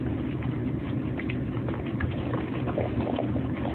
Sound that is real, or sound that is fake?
real